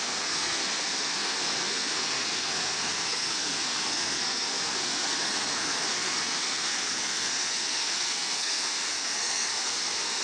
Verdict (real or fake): fake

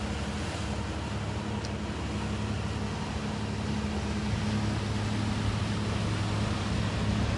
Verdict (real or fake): real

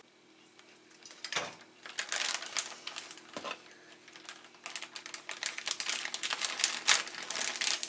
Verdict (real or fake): real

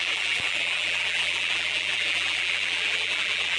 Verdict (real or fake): fake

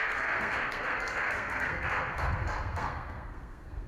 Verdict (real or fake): fake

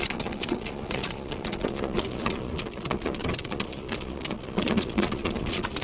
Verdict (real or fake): fake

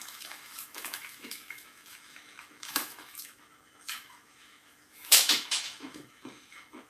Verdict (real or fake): fake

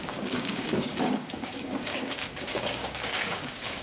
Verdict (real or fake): fake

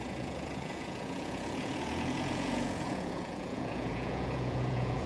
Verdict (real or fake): fake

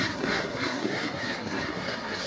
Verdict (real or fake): fake